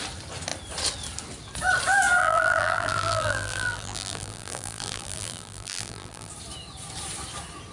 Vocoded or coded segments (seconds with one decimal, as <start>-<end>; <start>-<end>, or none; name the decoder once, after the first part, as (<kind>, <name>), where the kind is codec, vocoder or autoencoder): 2.2-6.3 (vocoder, BigVGAN v2)